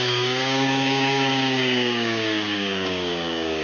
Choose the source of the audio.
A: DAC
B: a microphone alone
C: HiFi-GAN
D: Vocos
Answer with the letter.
A